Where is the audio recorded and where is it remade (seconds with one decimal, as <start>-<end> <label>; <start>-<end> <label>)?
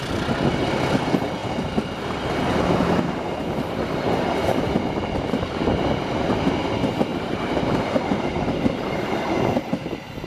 0.0-7.1 recorded; 7.1-8.1 remade; 8.1-10.3 recorded